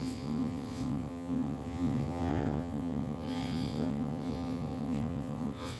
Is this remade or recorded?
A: remade